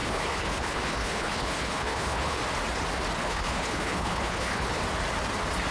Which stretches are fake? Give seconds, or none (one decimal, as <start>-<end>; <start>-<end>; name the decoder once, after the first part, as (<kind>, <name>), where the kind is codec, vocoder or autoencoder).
0.0-2.4 (codec, HILCodec); 3.2-4.8